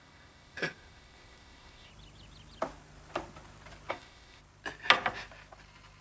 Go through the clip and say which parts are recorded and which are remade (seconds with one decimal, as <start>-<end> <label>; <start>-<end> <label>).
0.0-1.9 remade; 1.9-3.9 recorded; 3.9-4.4 remade; 4.4-6.0 recorded